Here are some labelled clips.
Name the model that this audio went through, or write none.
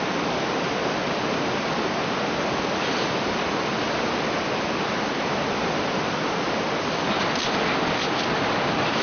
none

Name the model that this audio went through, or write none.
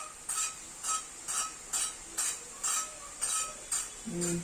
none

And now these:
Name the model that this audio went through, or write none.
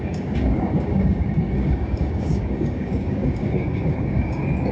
codec, DAC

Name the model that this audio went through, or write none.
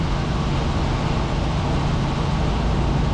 none